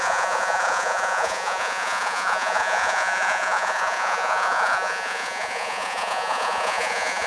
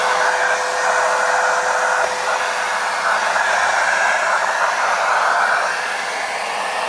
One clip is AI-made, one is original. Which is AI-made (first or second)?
first